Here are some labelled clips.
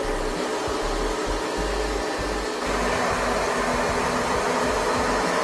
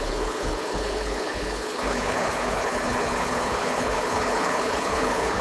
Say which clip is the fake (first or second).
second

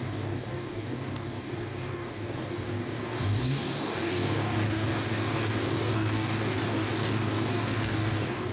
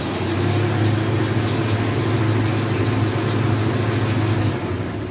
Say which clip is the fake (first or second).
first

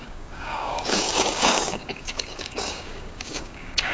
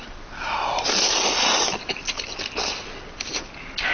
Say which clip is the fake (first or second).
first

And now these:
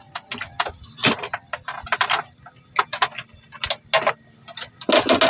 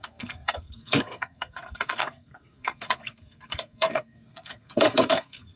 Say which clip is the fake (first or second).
second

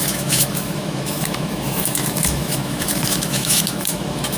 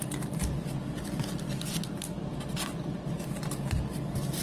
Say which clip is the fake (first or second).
first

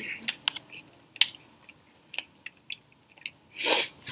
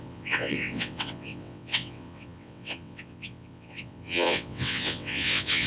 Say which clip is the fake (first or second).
second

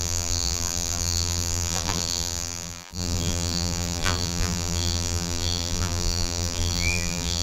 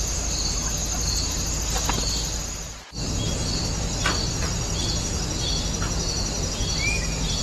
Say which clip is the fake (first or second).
first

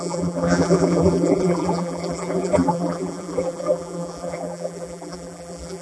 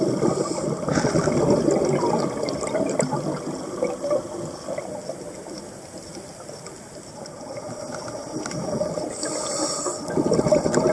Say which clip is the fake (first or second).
first